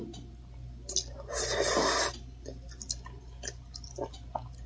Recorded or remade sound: recorded